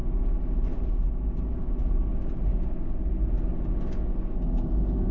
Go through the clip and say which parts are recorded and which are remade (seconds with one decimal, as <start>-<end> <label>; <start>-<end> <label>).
0.0-5.1 recorded